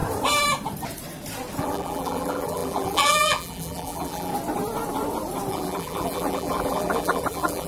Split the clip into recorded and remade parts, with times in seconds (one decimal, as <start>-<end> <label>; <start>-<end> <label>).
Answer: 0.0-1.6 recorded; 1.6-4.3 remade; 4.3-5.5 recorded; 5.5-7.7 remade